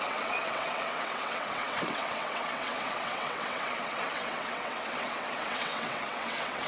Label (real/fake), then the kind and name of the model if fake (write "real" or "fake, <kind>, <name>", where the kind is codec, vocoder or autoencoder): fake, vocoder, WaveNeXt